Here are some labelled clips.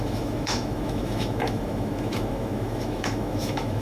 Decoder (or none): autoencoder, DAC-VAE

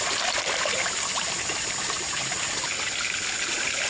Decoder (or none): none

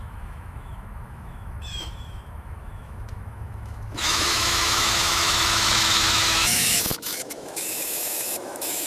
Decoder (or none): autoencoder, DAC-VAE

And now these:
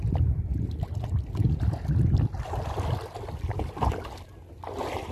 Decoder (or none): none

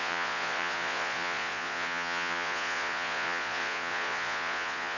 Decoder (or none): vocoder, Vocos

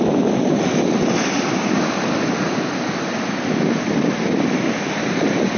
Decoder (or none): none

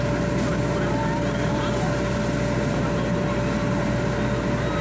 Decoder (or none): none